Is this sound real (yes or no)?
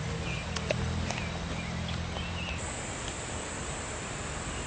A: yes